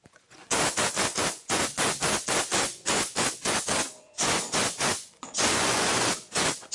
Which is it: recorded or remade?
remade